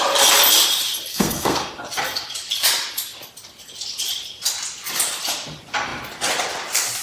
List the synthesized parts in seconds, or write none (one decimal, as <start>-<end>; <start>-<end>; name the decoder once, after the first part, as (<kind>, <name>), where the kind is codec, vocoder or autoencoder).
1.1-1.7 (codec, SNAC)